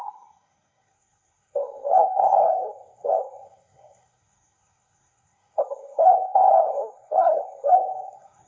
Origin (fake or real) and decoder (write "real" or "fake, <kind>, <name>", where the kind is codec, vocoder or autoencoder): fake, codec, SNAC